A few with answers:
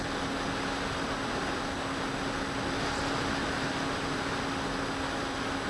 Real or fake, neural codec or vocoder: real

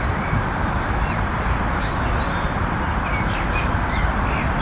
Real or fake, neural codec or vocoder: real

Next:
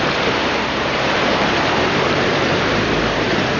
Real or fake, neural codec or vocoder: fake, vocoder, BigVGAN v2